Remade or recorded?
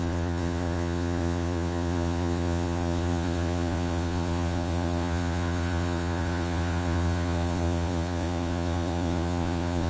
remade